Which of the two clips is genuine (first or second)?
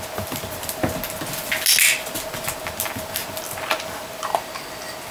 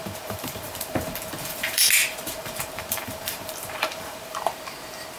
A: first